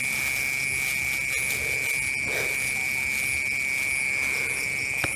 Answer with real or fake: real